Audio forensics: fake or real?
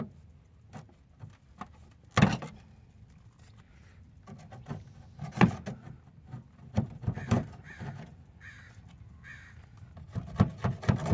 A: real